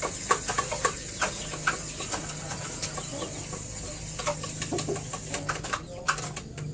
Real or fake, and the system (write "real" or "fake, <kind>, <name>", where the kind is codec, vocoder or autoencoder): real